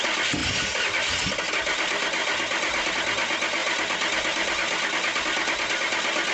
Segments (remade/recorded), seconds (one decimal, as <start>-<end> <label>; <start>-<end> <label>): 0.0-6.3 recorded